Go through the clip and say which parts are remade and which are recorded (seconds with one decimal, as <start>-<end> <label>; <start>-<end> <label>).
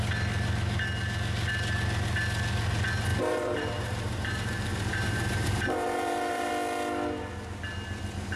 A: 0.0-3.1 recorded; 3.1-6.5 remade; 6.5-8.4 recorded